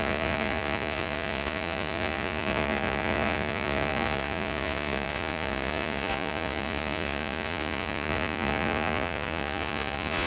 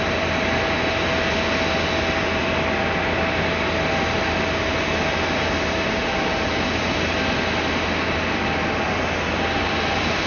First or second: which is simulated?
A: first